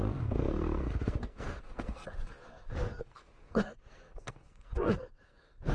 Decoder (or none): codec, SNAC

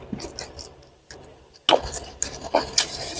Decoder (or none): none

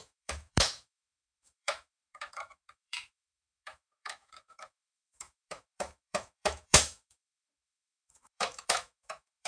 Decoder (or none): autoencoder, DAC-VAE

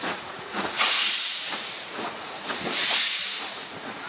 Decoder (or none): vocoder, Vocos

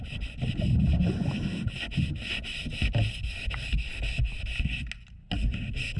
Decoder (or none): none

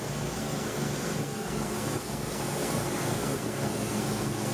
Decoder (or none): codec, SNAC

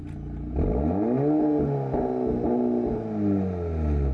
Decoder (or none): none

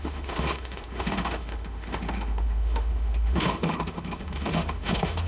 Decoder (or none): autoencoder, DAC-VAE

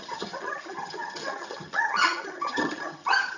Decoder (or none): vocoder, HiFi-GAN